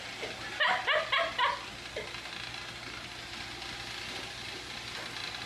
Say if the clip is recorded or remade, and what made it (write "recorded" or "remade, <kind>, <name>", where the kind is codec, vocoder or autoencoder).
recorded